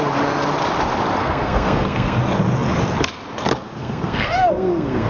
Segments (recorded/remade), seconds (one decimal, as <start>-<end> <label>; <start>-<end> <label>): 0.0-1.2 recorded; 1.2-2.2 remade; 2.2-3.8 recorded; 3.8-5.1 remade